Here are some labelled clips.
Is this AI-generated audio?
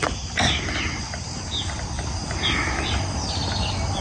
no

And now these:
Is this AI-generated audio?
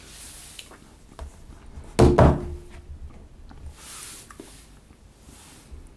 no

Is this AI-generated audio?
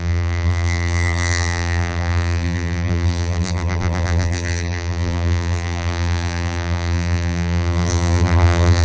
yes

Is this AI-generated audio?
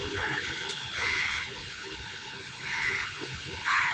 yes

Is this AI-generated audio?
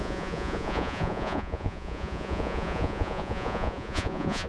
yes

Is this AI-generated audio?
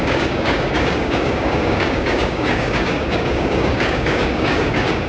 yes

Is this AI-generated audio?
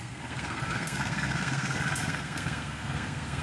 yes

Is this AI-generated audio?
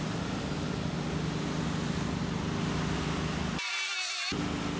no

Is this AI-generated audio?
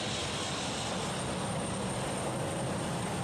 no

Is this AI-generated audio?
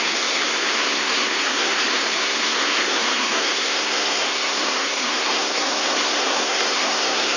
yes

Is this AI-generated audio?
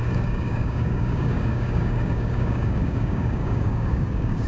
yes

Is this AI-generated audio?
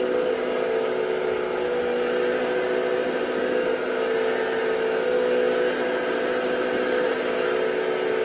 no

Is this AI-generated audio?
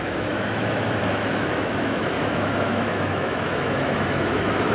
yes